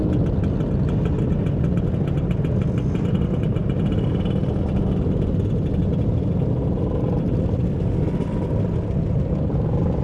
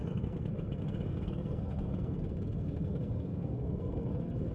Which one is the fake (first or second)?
second